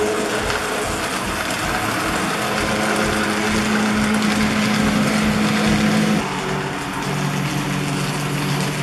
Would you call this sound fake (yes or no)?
no